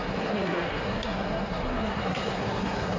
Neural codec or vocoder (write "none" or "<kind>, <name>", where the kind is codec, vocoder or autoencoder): codec, SNAC